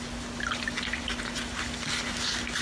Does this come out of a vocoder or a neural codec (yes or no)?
no